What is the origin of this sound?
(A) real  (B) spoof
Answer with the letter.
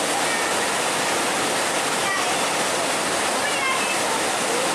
A